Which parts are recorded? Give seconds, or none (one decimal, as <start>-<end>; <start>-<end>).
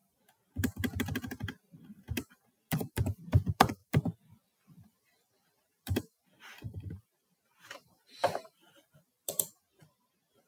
none